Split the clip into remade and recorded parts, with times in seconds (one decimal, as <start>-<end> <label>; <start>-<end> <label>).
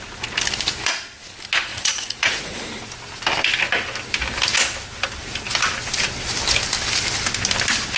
0.0-1.7 recorded; 1.7-2.6 remade; 2.6-8.0 recorded